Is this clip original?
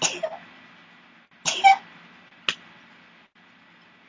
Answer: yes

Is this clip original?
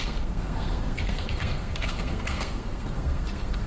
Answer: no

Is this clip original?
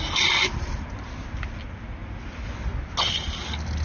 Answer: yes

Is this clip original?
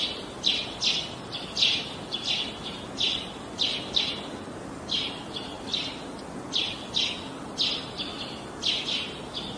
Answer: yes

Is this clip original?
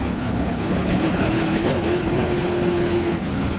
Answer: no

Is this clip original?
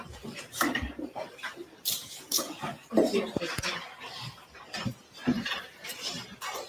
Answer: no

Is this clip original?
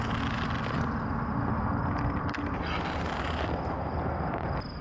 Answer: yes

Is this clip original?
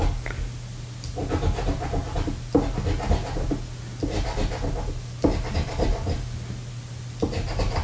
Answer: yes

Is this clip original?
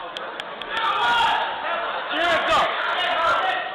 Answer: yes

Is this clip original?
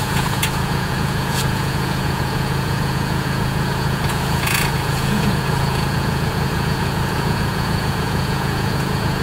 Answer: no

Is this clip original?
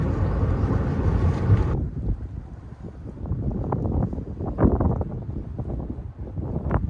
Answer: yes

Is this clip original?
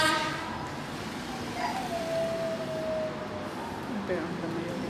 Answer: yes